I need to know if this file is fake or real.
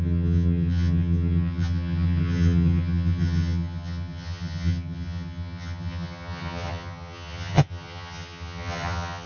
fake